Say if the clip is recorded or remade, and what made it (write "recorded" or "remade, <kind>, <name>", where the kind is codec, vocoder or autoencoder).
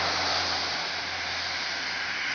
recorded